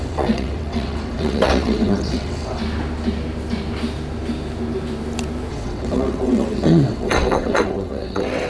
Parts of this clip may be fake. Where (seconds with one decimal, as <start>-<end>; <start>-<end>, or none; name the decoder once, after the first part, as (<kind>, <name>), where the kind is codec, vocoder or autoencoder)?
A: 0.0-2.6 (vocoder, WaveNeXt); 5.5-8.5